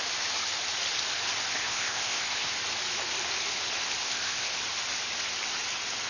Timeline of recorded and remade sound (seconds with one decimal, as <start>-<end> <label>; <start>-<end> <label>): 0.0-1.6 recorded; 1.6-2.5 remade; 2.5-4.0 recorded; 4.0-4.6 remade; 4.6-6.1 recorded